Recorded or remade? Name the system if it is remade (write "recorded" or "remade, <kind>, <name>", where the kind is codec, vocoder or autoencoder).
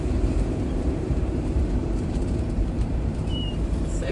remade, vocoder, BigVGAN v2